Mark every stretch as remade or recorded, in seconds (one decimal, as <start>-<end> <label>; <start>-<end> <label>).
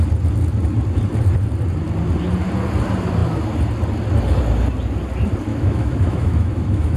0.0-5.5 recorded; 5.5-7.0 remade